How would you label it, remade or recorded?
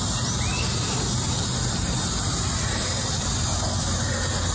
recorded